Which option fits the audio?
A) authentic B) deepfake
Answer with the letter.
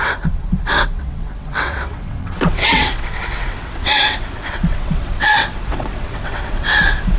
B